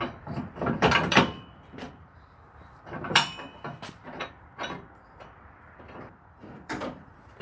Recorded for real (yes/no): no